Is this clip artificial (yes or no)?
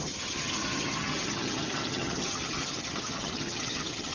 yes